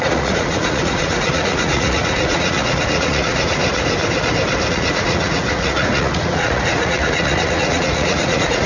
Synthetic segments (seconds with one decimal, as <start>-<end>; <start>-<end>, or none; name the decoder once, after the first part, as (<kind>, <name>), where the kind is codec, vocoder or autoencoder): 0.0-3.6 (vocoder, Vocos); 4.7-8.7